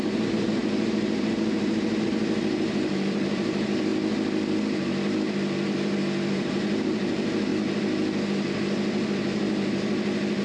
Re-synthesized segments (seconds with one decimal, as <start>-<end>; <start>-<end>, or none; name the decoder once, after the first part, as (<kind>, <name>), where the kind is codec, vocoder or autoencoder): 0.0-3.9 (vocoder, BigVGAN v2); 6.3-7.5